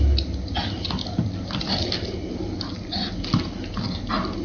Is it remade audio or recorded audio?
recorded